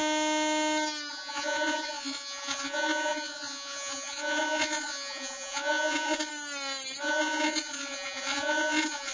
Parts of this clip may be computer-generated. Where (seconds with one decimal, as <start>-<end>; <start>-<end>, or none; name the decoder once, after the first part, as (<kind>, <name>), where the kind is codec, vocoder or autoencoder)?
1.1-6.3 (vocoder, Vocos); 7.0-9.1